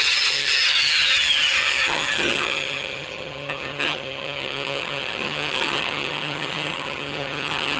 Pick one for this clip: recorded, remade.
remade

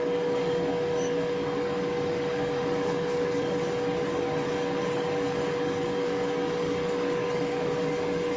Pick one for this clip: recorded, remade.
remade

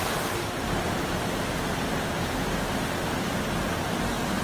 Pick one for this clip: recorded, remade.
remade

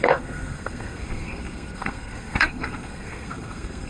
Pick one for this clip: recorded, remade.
remade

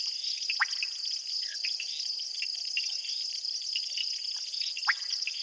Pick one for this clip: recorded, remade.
recorded